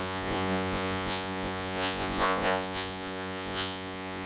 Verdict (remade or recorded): remade